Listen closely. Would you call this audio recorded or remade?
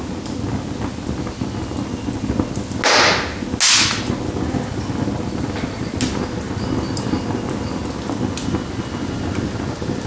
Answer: recorded